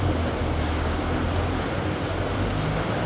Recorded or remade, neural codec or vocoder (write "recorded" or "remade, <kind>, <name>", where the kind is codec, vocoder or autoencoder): recorded